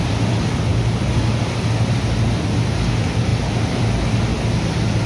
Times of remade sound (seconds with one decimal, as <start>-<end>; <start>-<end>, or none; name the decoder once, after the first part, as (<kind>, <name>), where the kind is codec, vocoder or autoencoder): none